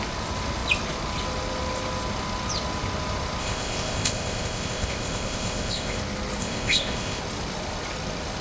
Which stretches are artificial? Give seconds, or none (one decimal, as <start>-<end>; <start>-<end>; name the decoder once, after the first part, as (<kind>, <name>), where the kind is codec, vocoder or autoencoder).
3.4-6.0 (codec, ZipCodec); 6.4-7.2